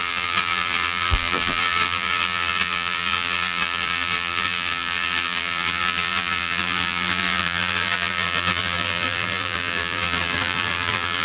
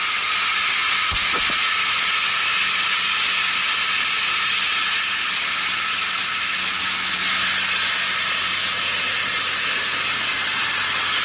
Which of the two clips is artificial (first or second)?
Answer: first